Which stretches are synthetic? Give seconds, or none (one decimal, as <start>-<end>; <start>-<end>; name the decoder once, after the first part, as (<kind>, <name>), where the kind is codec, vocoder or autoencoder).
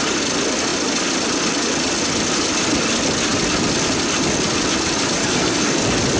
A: 5.2-5.8 (codec, SNAC)